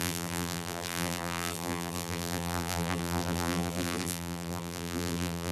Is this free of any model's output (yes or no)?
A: no